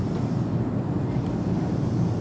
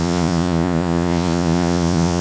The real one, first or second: first